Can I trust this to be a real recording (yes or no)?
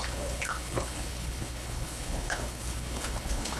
no